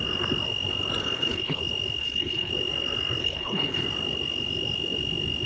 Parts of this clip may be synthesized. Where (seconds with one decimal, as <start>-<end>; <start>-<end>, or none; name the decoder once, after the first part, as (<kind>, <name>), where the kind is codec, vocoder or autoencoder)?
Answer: 1.0-1.6 (codec, HILCodec); 2.0-2.5; 3.2-3.8